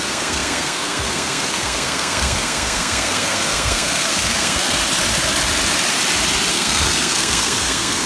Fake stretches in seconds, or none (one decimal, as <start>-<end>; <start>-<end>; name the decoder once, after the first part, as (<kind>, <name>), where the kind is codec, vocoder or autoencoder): 0.0-4.8 (codec, SNAC); 6.5-8.1